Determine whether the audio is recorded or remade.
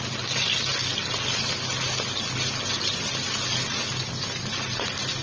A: recorded